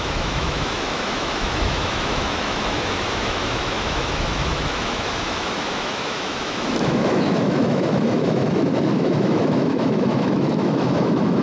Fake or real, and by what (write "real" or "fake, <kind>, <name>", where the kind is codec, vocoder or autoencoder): fake, autoencoder, DAC-VAE